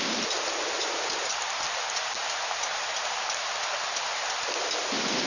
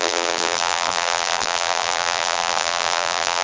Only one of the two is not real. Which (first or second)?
second